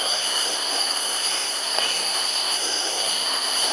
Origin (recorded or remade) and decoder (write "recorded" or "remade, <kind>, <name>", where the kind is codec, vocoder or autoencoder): remade, codec, SNAC